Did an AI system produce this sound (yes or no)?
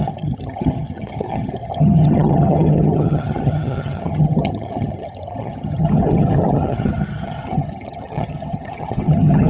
yes